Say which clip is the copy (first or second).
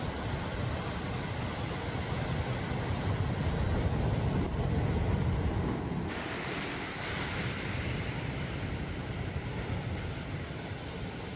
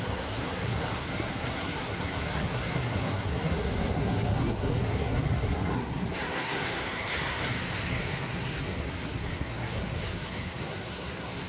second